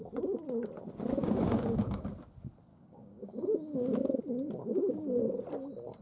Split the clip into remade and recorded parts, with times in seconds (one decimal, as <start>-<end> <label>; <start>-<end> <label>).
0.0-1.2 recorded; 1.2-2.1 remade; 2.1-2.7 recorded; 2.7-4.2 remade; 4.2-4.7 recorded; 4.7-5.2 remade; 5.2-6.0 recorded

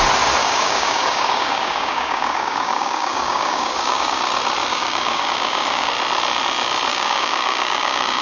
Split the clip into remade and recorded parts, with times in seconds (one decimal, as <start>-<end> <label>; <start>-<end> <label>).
0.0-0.4 recorded; 0.4-4.2 remade; 4.2-4.7 recorded; 4.7-5.9 remade; 5.9-6.9 recorded; 6.9-8.2 remade

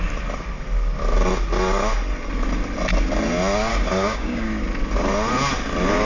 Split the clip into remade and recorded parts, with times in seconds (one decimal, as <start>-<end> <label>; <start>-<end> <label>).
0.0-3.7 recorded; 3.7-4.5 remade; 4.5-6.0 recorded

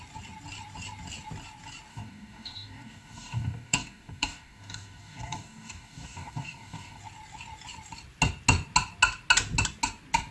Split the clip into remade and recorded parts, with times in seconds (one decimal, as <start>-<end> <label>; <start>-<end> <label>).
0.0-1.9 recorded; 1.9-7.0 remade; 7.0-10.3 recorded

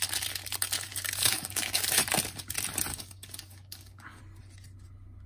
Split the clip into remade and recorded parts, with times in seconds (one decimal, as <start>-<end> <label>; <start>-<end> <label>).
0.0-0.9 recorded; 0.9-2.0 remade; 2.0-2.9 recorded; 2.9-4.2 remade; 4.2-5.3 recorded

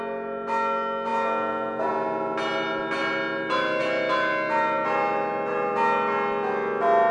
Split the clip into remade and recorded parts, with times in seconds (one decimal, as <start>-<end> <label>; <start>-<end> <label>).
0.0-7.1 recorded